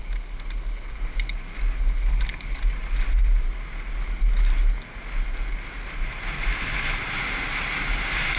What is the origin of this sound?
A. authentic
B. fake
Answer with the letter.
A